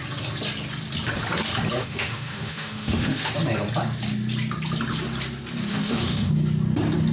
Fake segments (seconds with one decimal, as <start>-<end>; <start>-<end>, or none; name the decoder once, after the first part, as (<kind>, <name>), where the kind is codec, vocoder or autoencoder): 1.8-3.3 (autoencoder, DAC-VAE); 5.7-6.3